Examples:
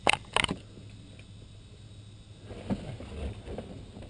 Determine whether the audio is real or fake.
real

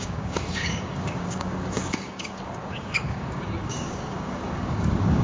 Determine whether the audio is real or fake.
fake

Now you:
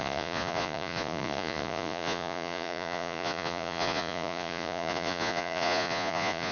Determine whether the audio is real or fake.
fake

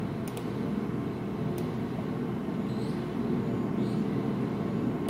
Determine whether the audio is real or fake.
real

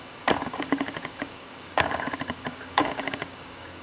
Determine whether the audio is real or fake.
fake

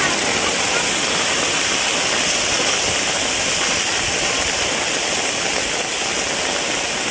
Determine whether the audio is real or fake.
real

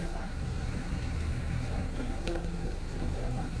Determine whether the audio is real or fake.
fake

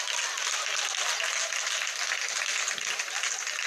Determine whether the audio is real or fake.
real